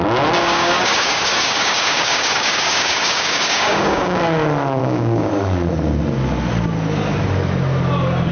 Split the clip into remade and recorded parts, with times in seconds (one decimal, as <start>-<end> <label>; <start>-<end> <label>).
0.0-0.4 recorded; 0.4-4.2 remade; 4.2-4.8 recorded; 4.8-5.3 remade; 5.3-8.3 recorded